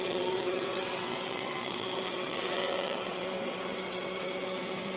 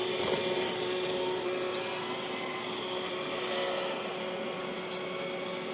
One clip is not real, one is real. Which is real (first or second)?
second